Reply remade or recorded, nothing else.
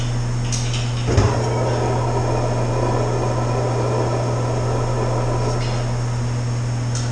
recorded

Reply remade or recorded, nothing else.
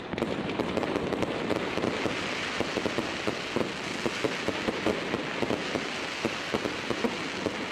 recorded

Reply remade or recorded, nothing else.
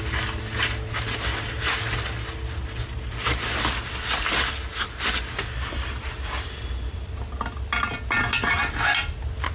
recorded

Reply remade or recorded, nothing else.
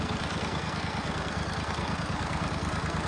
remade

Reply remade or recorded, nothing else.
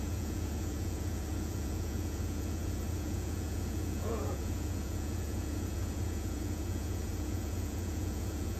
remade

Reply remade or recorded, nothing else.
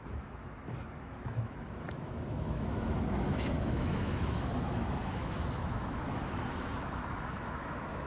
remade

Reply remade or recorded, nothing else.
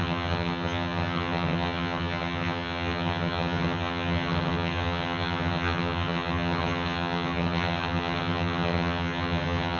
remade